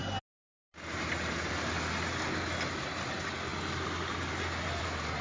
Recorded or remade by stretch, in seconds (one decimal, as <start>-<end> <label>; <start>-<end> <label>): 0.0-3.5 recorded; 3.5-4.8 remade; 4.8-5.2 recorded